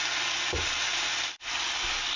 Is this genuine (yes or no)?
yes